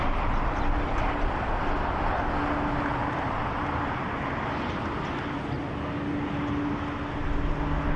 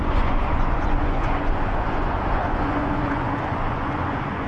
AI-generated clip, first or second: second